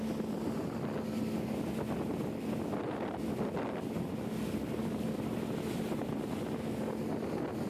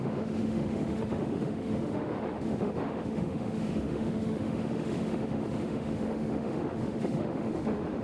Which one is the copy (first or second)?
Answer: second